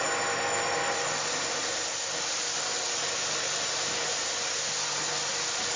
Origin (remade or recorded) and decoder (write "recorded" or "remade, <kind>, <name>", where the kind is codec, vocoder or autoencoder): recorded